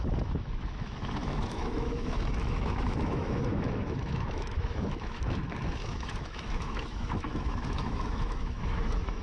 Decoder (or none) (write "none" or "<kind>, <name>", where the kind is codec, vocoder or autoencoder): autoencoder, DAC-VAE